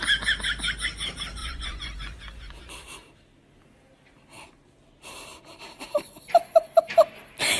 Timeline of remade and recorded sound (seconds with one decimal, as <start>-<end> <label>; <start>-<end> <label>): 0.0-1.4 recorded; 1.4-2.7 remade; 2.7-7.6 recorded